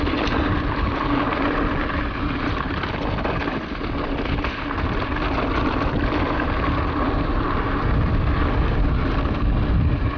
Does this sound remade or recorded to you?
recorded